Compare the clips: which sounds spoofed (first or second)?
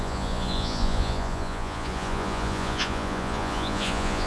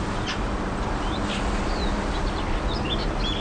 first